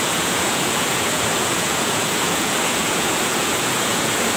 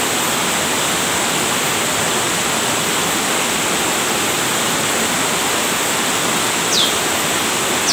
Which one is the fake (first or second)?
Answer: first